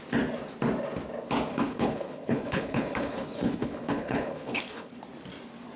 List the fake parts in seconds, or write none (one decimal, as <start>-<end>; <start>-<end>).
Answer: 1.5-5.0